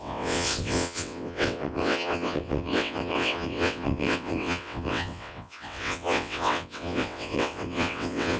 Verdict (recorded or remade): remade